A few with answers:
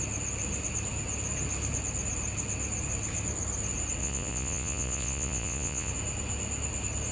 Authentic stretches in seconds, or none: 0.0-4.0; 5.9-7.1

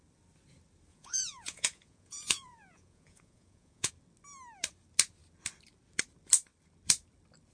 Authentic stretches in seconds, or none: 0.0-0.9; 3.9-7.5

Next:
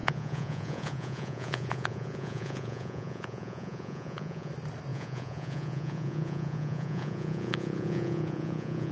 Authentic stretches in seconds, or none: 4.5-4.9